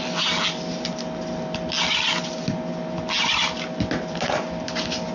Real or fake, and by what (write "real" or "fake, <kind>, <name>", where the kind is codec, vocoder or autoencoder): real